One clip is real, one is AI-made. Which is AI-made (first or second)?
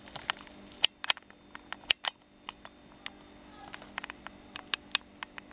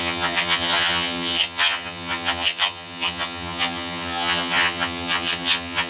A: second